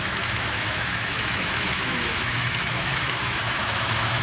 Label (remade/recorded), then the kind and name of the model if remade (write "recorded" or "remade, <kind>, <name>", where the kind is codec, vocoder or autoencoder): remade, autoencoder, DAC-VAE